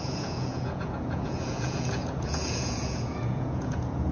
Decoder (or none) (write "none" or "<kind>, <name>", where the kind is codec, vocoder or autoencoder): vocoder, Vocos